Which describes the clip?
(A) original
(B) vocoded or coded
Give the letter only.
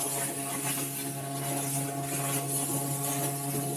A